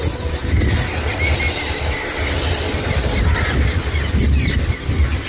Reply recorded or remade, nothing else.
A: recorded